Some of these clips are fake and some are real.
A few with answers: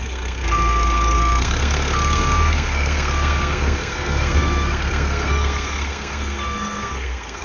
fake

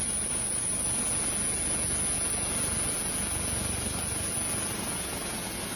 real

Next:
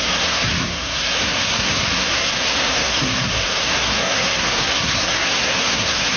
fake